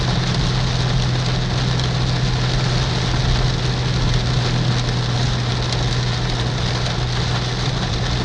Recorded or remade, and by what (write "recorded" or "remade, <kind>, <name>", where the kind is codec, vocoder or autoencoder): recorded